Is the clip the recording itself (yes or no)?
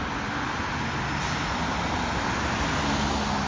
yes